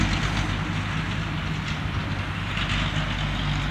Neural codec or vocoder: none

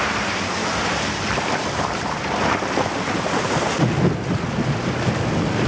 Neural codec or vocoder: none